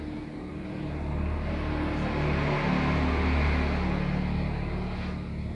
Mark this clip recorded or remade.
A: recorded